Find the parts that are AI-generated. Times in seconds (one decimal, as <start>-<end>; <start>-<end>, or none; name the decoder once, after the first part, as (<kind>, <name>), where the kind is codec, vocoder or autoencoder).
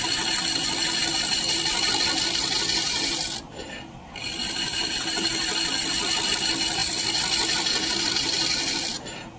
none